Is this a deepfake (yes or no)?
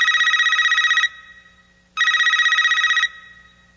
no